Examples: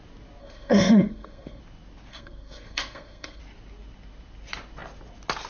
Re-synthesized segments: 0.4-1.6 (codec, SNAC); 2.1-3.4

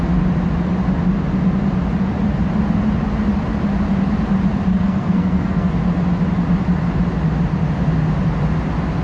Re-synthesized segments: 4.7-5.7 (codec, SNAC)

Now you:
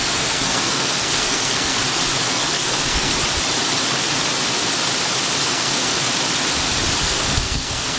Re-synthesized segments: 0.0-1.8 (codec, SNAC); 2.3-3.1; 5.4-5.9; 7.0-8.0

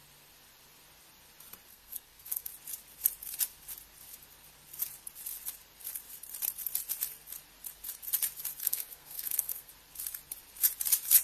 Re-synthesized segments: 1.7-2.5 (codec, SNAC); 8.6-9.7

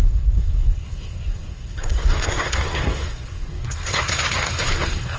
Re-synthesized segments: 0.0-5.2 (codec, SNAC)